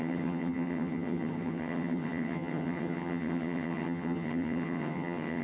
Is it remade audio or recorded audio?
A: remade